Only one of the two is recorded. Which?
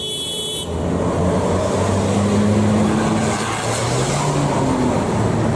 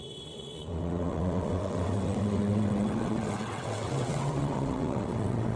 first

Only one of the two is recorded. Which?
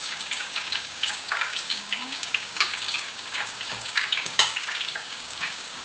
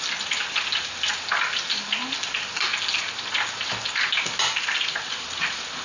second